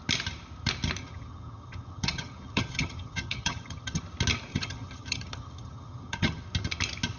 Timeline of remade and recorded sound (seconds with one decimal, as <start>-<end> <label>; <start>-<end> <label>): 0.0-1.0 recorded; 1.0-4.0 remade; 4.0-4.5 recorded; 4.5-6.4 remade; 6.4-7.2 recorded